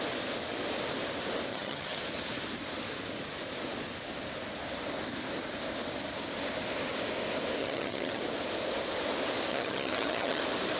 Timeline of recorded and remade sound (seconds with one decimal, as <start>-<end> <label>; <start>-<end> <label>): 0.0-1.5 recorded; 1.5-2.0 remade; 2.0-7.6 recorded; 7.6-8.2 remade; 8.2-9.5 recorded; 9.5-10.4 remade; 10.4-10.8 recorded